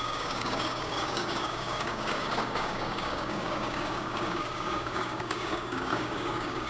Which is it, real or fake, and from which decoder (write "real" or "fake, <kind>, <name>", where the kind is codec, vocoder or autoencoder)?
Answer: fake, codec, DAC